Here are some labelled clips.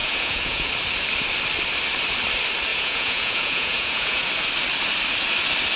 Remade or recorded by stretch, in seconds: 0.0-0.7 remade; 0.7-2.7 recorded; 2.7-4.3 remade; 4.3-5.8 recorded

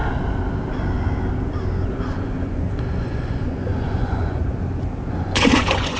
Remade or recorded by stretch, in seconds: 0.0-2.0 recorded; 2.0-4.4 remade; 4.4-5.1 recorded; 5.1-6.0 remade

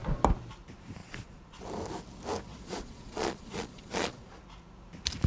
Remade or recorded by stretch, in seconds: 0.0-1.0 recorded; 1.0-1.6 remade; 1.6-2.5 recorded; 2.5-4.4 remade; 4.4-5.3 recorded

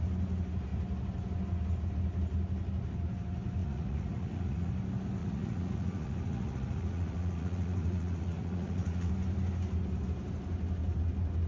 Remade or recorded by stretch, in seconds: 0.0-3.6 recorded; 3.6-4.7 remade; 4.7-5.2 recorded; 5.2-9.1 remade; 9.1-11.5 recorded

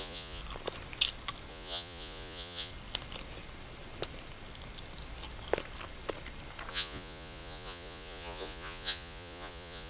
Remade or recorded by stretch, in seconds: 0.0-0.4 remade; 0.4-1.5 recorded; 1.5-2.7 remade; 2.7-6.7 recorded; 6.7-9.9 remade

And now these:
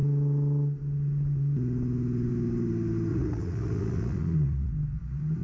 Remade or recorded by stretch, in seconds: 0.0-3.1 recorded; 3.1-4.7 remade; 4.7-5.4 recorded